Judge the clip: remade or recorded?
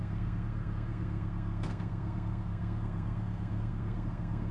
remade